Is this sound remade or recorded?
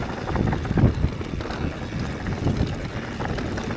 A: recorded